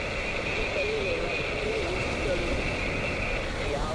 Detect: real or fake real